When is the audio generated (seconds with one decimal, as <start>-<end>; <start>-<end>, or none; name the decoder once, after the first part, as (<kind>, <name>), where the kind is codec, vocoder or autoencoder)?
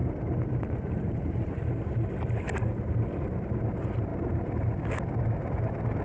0.0-1.6 (vocoder, BigVGAN v2)